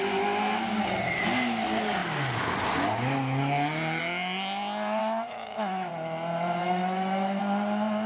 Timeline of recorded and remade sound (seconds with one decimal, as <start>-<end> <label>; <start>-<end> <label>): 0.0-5.0 recorded; 5.0-5.9 remade; 5.9-6.6 recorded; 6.6-7.4 remade; 7.4-8.1 recorded